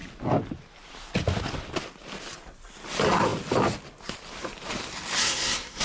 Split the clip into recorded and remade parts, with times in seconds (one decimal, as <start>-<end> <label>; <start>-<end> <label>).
0.0-5.2 recorded; 5.2-5.8 remade